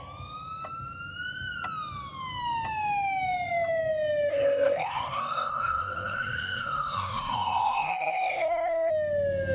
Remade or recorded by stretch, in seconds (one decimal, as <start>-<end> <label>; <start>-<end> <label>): 0.0-4.3 recorded; 4.3-8.9 remade; 8.9-9.5 recorded